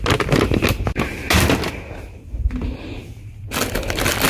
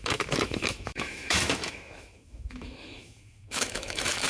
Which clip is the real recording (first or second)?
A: first